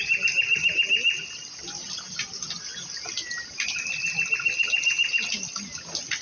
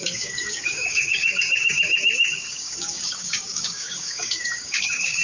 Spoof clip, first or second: second